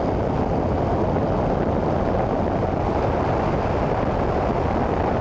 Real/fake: real